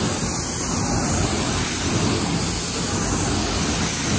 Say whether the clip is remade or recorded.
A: recorded